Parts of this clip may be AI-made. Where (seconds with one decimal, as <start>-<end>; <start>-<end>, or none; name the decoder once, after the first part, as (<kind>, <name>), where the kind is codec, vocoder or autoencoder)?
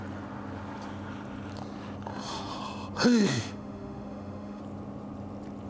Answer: 2.1-2.6 (autoencoder, DAC-VAE); 3.3-4.6